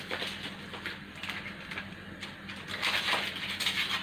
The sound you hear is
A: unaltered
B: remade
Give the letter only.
A